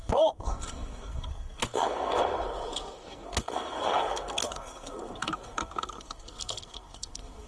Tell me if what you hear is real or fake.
fake